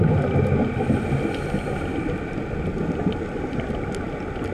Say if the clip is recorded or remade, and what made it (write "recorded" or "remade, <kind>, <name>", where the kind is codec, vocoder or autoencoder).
recorded